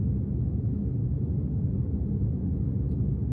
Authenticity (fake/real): real